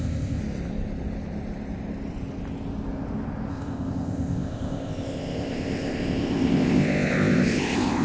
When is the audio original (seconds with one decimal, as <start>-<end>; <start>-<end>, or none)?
0.4-3.5